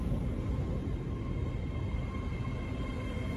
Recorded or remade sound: recorded